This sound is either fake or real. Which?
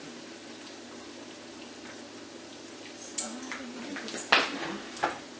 real